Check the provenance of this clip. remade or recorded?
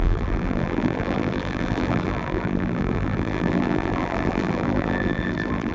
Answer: remade